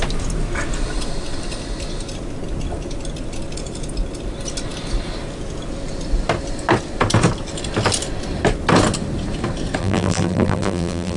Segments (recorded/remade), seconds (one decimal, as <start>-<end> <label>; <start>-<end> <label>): 0.0-9.8 recorded; 9.8-11.2 remade